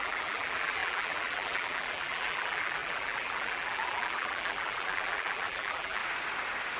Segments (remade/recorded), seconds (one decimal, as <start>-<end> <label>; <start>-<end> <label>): 0.0-6.0 remade; 6.0-6.8 recorded